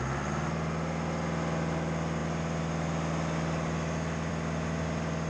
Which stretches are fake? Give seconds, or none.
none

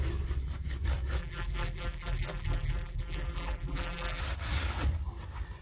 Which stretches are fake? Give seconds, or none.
1.2-4.2 (vocoder, BigVGAN v2)

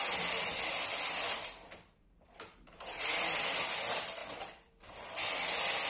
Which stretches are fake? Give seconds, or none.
0.0-3.5 (vocoder, BigVGAN v2); 4.2-5.5